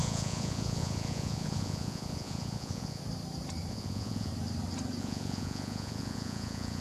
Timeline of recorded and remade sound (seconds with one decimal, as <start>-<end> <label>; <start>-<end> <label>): 0.0-3.0 remade; 3.0-3.7 recorded; 3.7-4.3 remade; 4.3-5.0 recorded; 5.0-6.8 remade